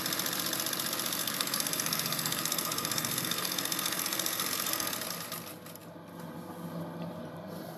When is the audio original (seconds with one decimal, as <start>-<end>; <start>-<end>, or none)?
0.0-1.2; 4.9-7.8